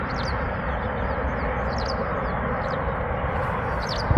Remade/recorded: recorded